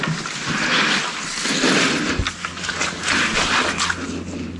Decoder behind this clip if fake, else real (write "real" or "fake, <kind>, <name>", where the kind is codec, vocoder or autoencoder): real